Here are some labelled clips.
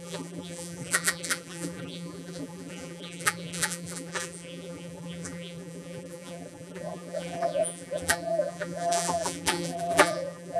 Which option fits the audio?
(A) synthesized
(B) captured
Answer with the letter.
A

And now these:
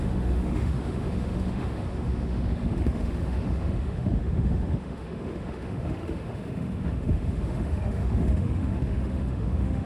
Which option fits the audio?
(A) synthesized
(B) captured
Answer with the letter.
A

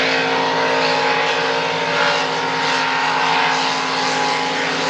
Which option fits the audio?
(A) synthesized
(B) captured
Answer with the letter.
B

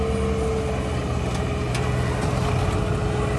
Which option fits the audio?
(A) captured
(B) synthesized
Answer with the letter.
A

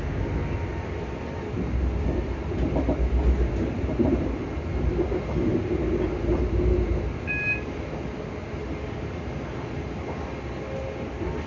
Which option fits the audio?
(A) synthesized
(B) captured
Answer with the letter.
B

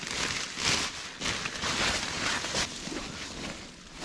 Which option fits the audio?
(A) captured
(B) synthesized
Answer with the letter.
A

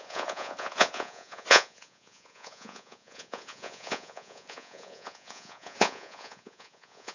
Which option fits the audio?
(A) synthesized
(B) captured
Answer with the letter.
A